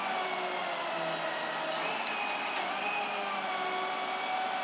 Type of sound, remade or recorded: recorded